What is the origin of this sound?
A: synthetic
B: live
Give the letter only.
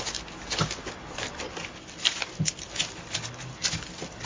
B